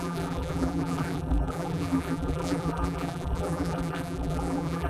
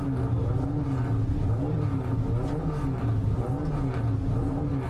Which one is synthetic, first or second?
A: first